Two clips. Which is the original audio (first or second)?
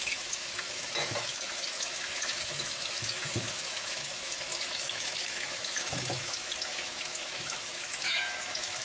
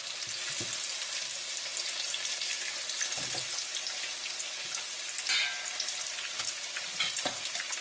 second